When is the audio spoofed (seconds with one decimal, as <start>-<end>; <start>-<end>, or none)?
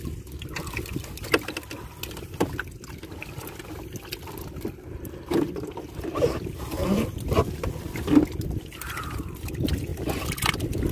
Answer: none